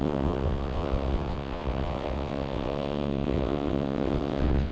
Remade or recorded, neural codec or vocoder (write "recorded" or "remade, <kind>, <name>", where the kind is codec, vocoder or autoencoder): remade, vocoder, WaveNeXt